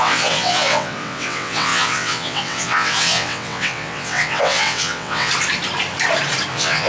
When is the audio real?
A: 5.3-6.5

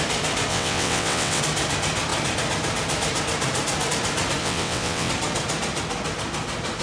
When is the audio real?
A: 0.0-0.5; 1.4-4.4; 5.1-6.8

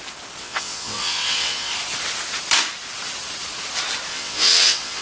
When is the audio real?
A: 0.0-0.4; 1.7-4.1

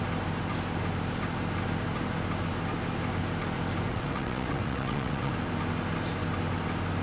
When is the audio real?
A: 0.0-3.9; 5.3-7.0

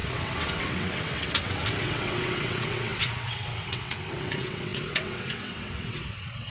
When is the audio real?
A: none